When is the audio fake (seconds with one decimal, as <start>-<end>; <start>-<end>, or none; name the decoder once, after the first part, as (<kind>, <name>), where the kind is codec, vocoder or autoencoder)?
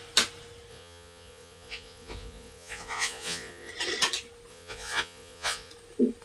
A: 0.7-3.7 (vocoder, Vocos); 4.5-5.7